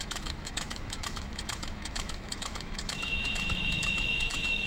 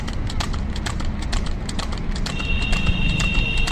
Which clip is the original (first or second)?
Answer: second